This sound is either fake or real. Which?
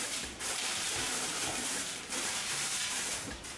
fake